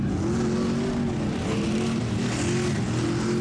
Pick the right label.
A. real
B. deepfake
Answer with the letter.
A